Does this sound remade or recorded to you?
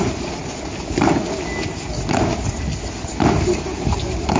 recorded